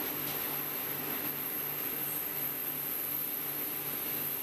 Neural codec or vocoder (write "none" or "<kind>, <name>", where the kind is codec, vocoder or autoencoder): none